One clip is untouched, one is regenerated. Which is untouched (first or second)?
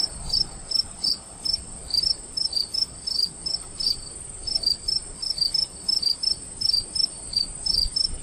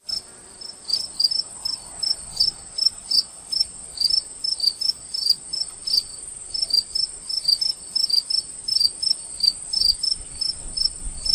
second